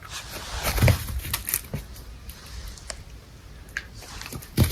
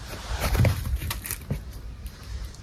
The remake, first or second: second